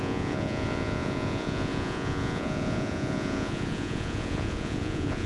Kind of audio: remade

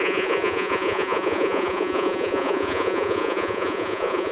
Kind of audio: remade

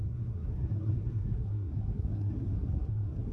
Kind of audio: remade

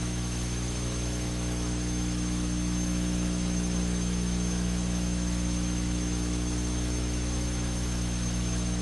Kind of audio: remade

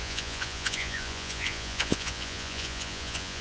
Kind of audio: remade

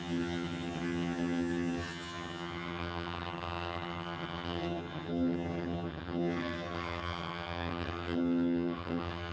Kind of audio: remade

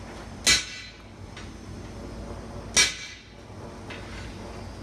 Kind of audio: recorded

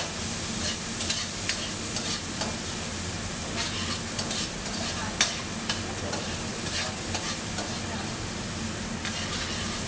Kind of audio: recorded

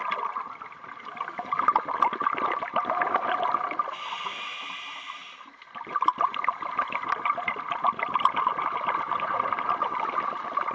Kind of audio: recorded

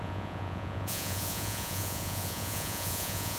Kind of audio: remade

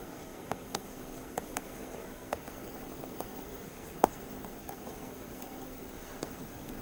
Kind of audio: remade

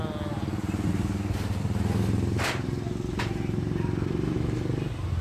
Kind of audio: recorded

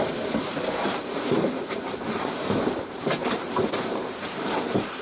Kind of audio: remade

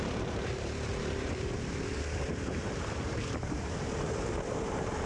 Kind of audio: remade